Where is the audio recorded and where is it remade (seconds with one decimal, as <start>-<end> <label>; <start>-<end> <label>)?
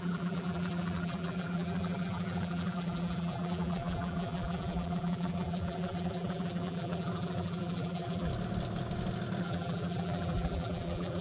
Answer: 0.0-8.3 remade; 8.3-9.4 recorded; 9.4-11.2 remade